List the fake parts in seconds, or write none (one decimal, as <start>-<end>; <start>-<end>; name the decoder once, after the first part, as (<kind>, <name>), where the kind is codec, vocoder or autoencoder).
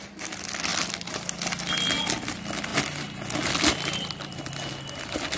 none